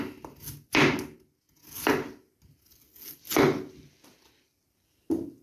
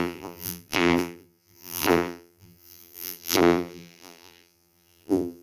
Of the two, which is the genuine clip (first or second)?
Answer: first